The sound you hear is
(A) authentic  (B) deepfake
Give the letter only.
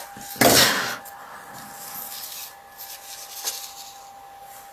A